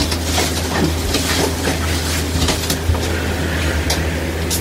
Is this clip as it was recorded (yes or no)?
yes